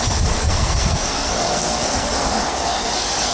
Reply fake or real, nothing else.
fake